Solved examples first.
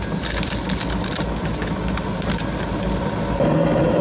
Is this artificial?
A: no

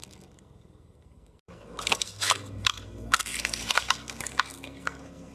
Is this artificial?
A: yes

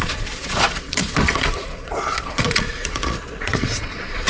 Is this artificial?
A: yes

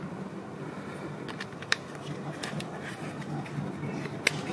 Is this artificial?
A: no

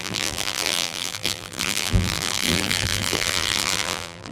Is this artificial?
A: yes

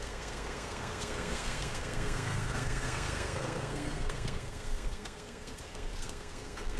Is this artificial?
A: yes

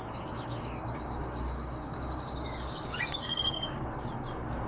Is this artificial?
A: yes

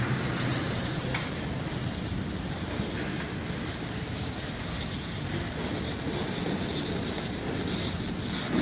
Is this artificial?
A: no